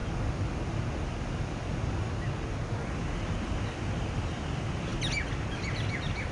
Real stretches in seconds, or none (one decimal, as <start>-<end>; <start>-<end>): 0.0-6.3